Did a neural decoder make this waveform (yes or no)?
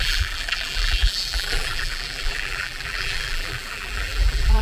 yes